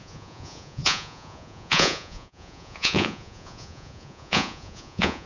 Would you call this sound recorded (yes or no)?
no